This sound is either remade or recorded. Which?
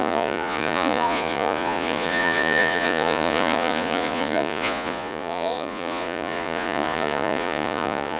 remade